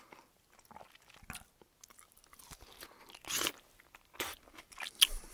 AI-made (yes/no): no